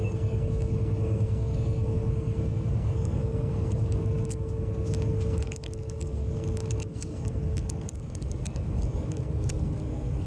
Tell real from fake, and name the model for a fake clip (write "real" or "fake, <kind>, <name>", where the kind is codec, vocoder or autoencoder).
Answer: fake, codec, SNAC